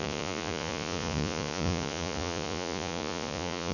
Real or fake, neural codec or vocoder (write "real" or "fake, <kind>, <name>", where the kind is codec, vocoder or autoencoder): fake, vocoder, Vocos